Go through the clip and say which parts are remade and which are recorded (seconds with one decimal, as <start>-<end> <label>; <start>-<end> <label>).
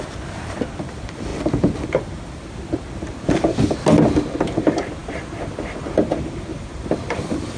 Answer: 0.0-5.0 recorded; 5.0-6.0 remade; 6.0-6.5 recorded; 6.5-7.6 remade